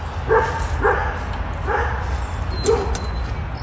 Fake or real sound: real